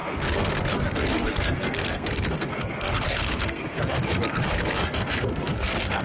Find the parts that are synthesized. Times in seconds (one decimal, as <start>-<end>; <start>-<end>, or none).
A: 0.0-6.0